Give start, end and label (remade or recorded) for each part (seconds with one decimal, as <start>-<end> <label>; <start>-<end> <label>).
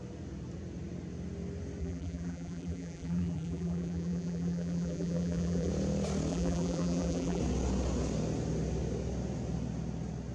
0.0-1.8 recorded; 1.8-5.7 remade; 5.7-6.3 recorded; 6.3-7.4 remade; 7.4-10.3 recorded